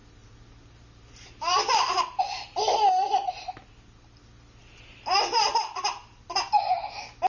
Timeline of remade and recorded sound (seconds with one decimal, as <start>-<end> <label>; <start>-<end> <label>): 0.0-7.3 recorded